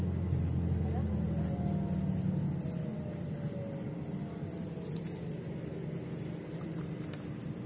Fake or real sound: real